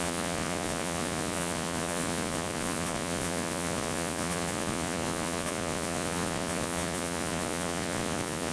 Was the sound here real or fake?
fake